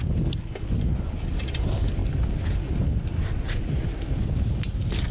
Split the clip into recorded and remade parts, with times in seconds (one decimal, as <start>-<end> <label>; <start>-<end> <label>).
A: 0.0-5.1 recorded